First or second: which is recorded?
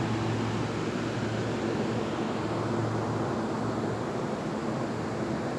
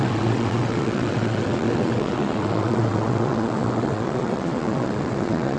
first